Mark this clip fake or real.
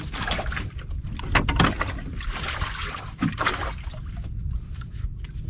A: real